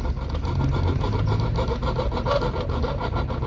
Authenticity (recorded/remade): recorded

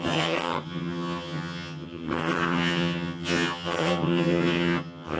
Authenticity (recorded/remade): remade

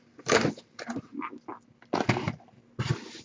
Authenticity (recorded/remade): recorded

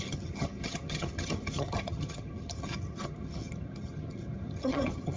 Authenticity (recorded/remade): remade